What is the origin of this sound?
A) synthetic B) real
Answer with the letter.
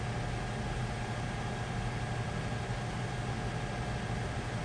B